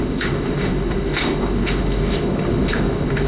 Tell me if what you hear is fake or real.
fake